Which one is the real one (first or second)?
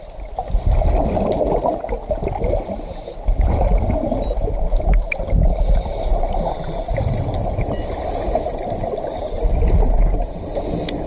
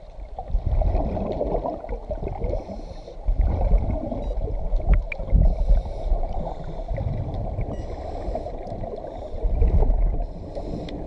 first